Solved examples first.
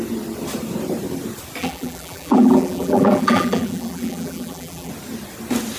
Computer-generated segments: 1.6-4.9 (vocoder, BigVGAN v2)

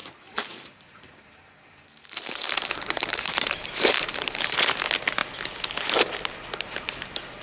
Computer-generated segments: 0.0-4.4 (vocoder, BigVGAN v2)